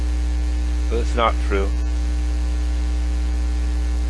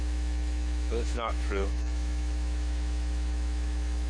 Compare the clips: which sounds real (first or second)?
first